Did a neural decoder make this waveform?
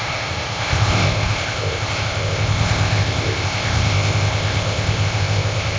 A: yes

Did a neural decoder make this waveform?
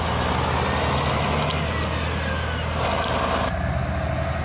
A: no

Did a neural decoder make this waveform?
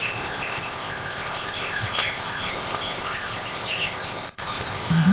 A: yes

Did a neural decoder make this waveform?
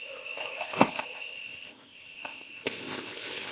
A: yes